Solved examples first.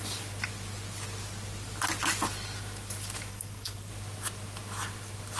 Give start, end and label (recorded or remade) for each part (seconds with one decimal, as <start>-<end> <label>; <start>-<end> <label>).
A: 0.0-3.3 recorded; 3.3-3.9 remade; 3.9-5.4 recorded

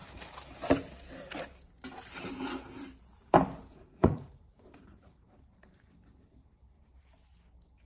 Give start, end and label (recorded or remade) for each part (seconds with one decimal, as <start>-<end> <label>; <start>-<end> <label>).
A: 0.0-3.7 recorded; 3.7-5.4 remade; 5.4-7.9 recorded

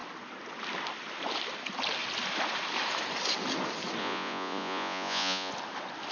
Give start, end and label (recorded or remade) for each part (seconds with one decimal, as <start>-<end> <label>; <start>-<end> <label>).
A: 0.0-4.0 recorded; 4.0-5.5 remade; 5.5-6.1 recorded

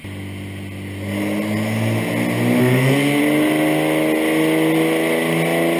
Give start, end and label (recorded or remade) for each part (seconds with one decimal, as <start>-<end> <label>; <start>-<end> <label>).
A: 0.0-2.6 recorded; 2.6-3.2 remade; 3.2-5.8 recorded